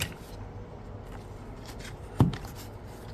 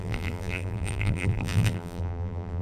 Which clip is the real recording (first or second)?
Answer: first